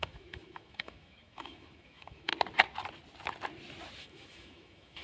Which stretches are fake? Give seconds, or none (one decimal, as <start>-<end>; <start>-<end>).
0.0-2.3; 4.0-5.0